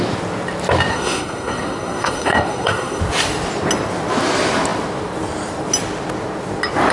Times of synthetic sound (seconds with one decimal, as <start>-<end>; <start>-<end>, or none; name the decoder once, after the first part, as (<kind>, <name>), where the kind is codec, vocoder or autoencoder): 0.9-3.0 (codec, SNAC)